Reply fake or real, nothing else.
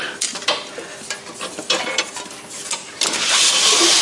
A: real